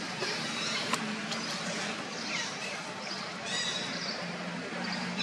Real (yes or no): no